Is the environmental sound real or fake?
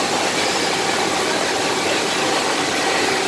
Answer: real